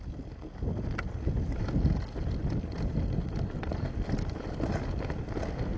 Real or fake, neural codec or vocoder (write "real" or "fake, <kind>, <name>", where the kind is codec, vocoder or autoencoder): real